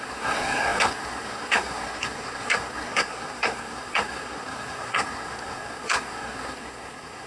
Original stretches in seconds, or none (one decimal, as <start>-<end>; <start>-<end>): none